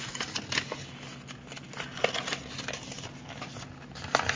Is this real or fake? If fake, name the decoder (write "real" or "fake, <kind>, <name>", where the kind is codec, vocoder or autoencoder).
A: real